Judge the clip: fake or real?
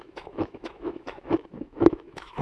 fake